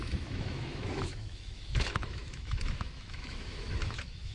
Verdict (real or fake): fake